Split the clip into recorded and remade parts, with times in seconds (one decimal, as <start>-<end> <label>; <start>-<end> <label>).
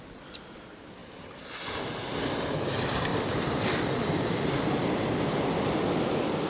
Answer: 0.0-3.1 recorded; 3.1-4.8 remade; 4.8-6.5 recorded